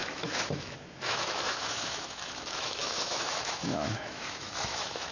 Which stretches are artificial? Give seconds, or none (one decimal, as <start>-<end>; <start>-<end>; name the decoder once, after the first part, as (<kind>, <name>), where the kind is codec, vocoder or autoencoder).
0.0-5.1 (autoencoder, DAC-VAE)